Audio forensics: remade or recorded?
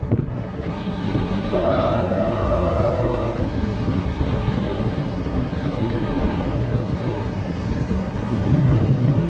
remade